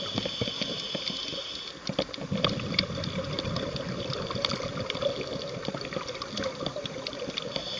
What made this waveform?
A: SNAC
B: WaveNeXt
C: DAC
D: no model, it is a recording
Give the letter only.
D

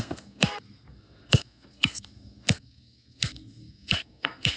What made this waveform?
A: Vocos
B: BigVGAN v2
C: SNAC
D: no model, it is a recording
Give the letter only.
C